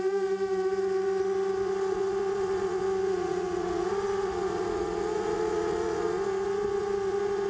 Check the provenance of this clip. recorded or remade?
remade